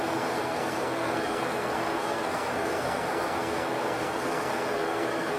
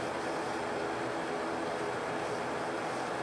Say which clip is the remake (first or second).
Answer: first